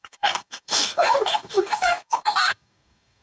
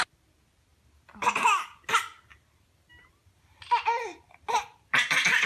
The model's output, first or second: first